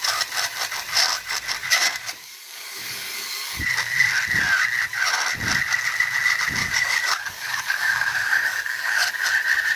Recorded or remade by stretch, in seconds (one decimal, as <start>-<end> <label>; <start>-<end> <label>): 0.0-1.6 recorded; 1.6-3.6 remade; 3.6-6.6 recorded; 6.6-9.1 remade; 9.1-9.8 recorded